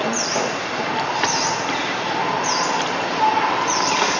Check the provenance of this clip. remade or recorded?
recorded